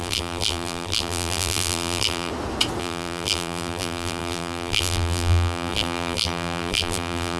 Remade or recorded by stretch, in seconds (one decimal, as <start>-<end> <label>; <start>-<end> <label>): 0.0-2.3 remade; 2.3-2.8 recorded; 2.8-7.4 remade